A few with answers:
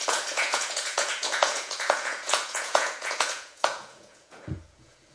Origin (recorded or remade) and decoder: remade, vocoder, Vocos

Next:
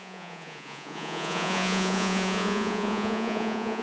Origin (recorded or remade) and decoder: remade, vocoder, Vocos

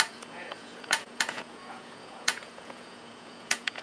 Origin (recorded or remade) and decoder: remade, vocoder, Vocos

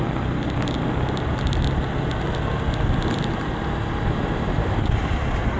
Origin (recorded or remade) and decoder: recorded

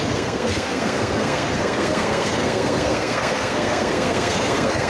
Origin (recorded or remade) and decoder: remade, codec, SNAC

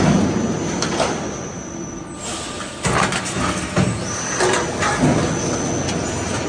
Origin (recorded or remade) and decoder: recorded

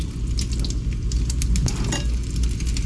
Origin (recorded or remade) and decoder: recorded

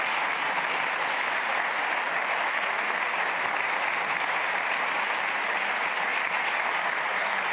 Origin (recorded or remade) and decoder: recorded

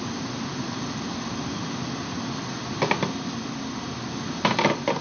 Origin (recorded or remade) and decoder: recorded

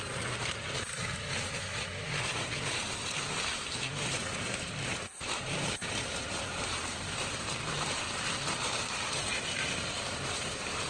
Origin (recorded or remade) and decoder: remade, vocoder, BigVGAN v2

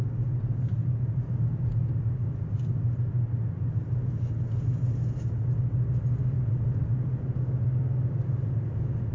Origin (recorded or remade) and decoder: recorded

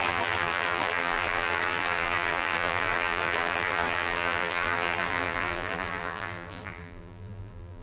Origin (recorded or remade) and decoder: remade, vocoder, BigVGAN v2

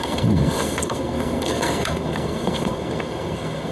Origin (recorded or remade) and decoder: remade, codec, SNAC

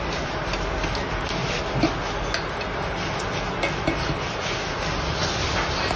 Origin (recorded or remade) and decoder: recorded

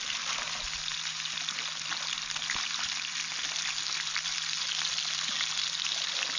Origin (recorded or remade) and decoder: recorded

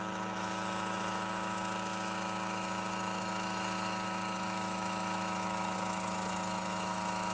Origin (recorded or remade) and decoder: remade, autoencoder, DAC-VAE